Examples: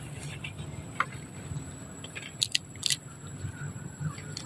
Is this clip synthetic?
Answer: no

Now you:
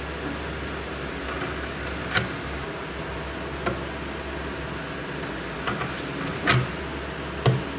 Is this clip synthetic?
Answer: no